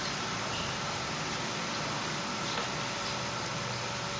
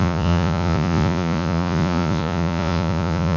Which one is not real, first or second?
second